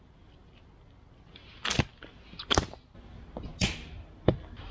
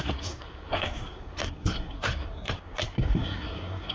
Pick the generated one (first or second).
second